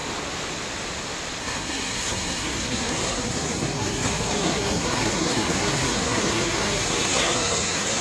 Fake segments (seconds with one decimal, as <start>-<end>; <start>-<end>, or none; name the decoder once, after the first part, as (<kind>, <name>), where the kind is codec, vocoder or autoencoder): 1.4-8.0 (codec, SNAC)